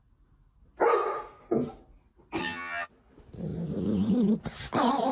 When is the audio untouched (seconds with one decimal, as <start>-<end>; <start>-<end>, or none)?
0.0-2.4; 2.9-5.1